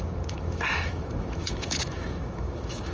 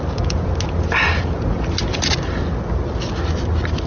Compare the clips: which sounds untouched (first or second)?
second